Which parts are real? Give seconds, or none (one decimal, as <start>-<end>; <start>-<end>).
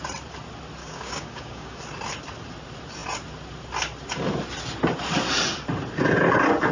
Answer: 0.0-0.8; 1.8-6.7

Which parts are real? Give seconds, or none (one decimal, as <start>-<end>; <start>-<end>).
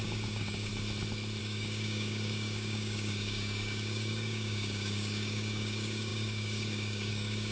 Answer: 0.7-1.4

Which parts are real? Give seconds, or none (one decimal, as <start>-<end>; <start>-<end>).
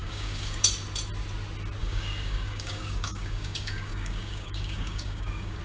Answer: 0.7-1.8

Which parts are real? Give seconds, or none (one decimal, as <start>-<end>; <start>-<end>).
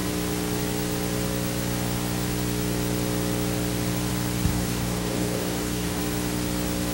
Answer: 0.0-4.5; 6.0-6.9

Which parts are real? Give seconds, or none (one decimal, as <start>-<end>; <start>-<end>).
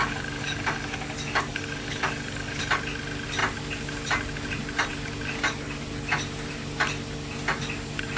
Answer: 2.6-8.2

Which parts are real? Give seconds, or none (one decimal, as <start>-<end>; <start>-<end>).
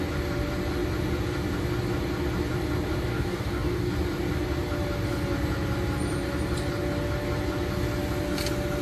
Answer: 0.0-3.1; 3.9-8.8